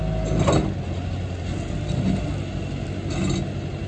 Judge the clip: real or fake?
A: real